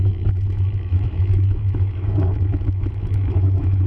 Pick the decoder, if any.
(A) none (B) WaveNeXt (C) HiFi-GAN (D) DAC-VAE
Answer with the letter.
D